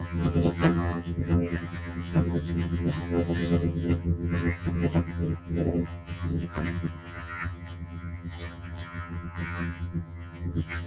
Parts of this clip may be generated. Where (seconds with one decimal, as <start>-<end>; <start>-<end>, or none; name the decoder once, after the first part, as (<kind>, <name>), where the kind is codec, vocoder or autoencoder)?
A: 0.0-10.9 (vocoder, HiFi-GAN)